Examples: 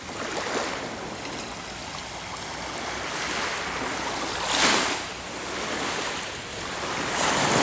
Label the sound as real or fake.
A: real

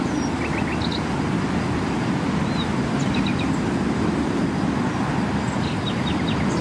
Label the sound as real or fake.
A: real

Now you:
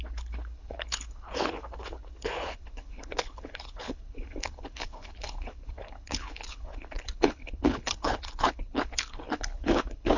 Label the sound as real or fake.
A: fake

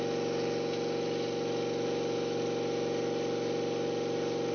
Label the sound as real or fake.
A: real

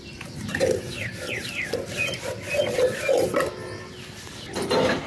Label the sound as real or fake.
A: real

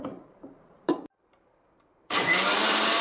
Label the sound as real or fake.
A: fake